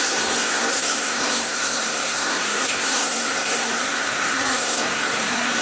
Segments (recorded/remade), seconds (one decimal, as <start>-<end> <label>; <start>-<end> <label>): 0.0-5.6 remade